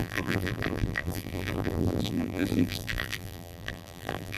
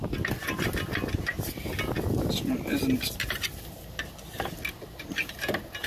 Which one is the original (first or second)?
second